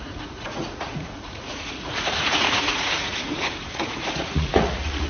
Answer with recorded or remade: remade